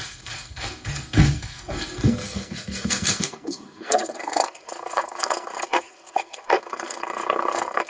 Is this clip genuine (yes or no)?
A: no